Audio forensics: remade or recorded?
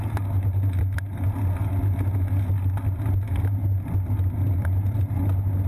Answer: recorded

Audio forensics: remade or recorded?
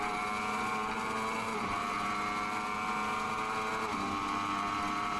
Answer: recorded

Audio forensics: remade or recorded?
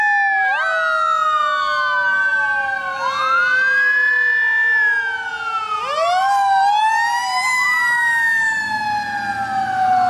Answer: recorded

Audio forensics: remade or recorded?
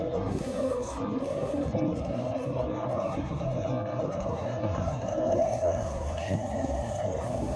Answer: remade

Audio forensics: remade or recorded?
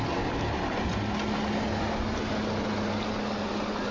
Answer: recorded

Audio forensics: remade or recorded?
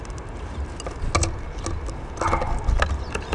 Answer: recorded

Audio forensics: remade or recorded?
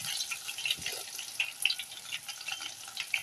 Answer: recorded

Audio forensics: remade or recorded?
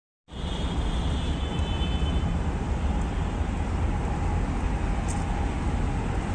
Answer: recorded